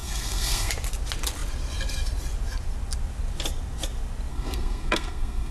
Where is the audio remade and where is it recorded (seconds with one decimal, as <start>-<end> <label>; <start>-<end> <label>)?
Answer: 0.0-0.7 remade; 0.7-4.3 recorded; 4.3-5.5 remade